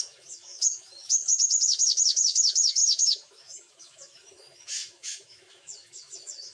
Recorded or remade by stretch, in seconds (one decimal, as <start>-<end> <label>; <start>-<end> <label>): 0.0-6.5 remade